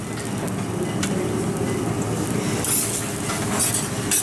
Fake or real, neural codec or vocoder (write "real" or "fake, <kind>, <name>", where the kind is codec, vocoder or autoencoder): real